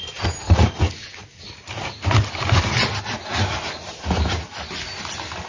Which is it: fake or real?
real